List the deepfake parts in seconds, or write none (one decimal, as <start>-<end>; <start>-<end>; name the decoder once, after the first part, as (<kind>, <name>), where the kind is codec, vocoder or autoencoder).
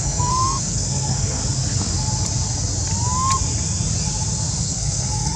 0.0-1.4 (codec, SNAC); 4.6-5.4